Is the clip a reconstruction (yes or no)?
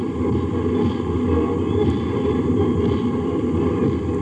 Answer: no